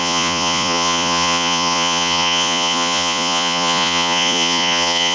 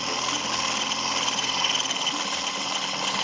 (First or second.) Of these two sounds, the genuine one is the second